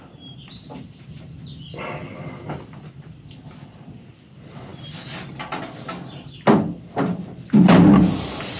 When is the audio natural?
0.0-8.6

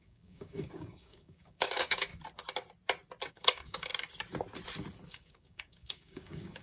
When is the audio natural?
2.1-3.3; 3.9-5.1

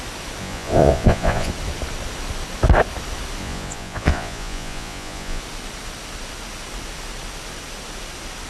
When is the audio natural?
0.0-0.4; 1.5-3.4; 5.4-8.5

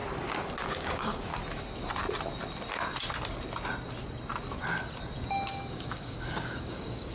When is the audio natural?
0.0-0.7; 1.3-5.5

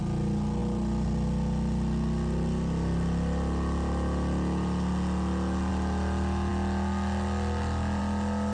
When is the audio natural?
0.0-8.5